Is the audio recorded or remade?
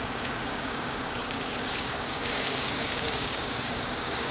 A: remade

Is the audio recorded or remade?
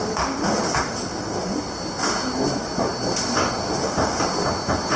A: recorded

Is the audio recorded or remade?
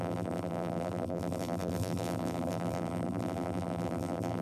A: remade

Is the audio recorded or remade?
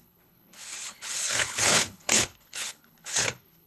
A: remade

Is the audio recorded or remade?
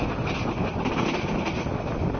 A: recorded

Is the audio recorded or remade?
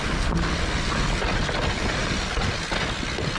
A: recorded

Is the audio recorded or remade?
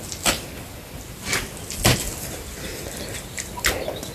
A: recorded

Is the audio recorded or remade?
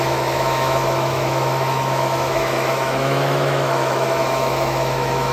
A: remade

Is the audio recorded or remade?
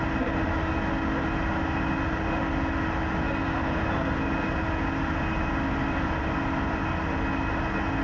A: recorded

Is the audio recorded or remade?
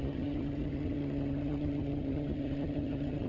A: remade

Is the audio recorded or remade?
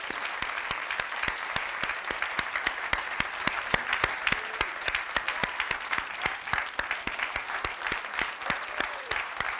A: recorded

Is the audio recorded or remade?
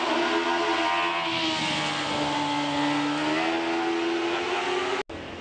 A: recorded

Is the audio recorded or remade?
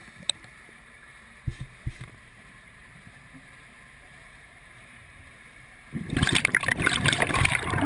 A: remade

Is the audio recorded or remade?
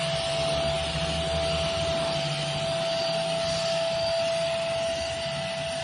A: recorded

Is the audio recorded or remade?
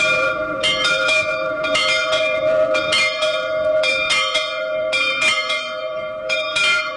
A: remade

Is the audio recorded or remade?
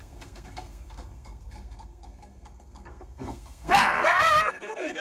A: remade